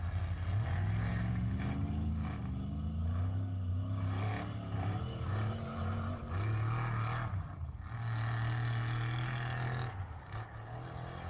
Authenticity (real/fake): real